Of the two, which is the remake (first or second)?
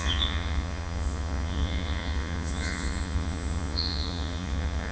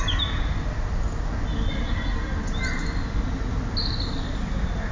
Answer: first